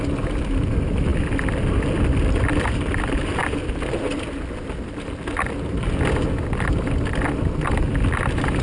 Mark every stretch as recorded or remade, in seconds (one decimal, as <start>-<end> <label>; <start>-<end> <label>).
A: 0.0-8.6 recorded